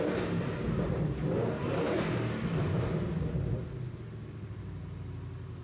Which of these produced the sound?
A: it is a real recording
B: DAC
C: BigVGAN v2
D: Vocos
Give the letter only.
A